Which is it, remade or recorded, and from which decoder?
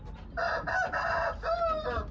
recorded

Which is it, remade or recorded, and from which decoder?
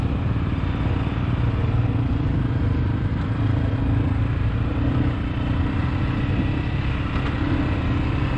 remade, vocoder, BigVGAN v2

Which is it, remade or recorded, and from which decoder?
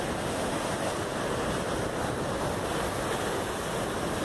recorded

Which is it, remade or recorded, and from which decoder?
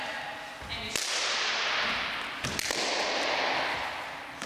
recorded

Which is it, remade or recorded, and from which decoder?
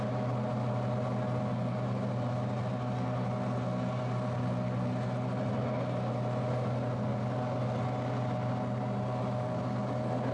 recorded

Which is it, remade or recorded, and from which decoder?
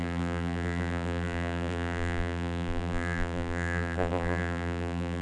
remade, vocoder, BigVGAN v2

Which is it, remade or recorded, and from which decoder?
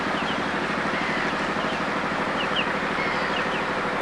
recorded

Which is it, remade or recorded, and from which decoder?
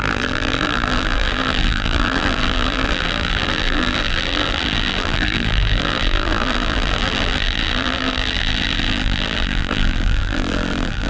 remade, vocoder, BigVGAN v2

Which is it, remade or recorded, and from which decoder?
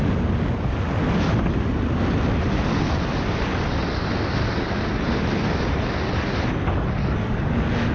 recorded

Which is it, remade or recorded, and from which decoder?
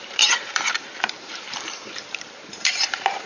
remade, vocoder, BigVGAN v2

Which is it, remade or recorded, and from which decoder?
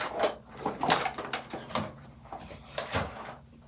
remade, vocoder, BigVGAN v2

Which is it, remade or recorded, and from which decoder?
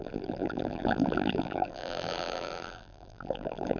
remade, vocoder, BigVGAN v2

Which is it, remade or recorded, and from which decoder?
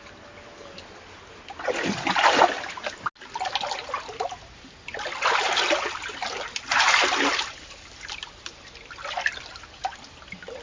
recorded